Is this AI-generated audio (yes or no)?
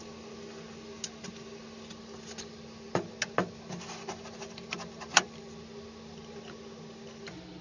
no